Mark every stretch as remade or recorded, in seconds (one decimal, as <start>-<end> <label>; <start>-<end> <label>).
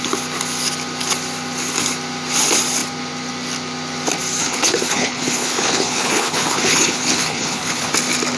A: 0.0-4.4 recorded; 4.4-7.9 remade; 7.9-8.4 recorded